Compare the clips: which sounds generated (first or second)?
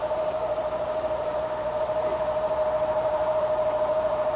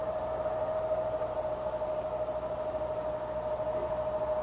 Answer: first